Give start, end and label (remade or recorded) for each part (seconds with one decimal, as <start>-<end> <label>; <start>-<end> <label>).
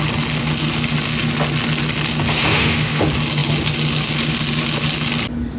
0.0-2.5 recorded; 2.5-3.0 remade; 3.0-5.6 recorded